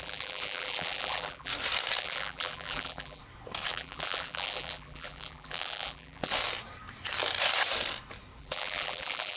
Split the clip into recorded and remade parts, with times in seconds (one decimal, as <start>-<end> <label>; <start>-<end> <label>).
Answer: 0.0-1.5 remade; 1.5-2.0 recorded; 2.0-3.2 remade; 3.2-3.7 recorded; 3.7-6.3 remade; 6.3-8.4 recorded; 8.4-9.4 remade